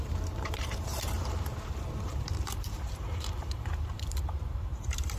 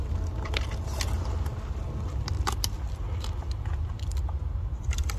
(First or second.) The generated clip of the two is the first